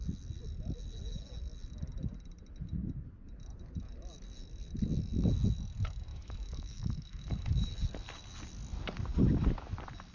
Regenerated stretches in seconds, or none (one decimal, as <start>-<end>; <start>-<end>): 6.1-7.7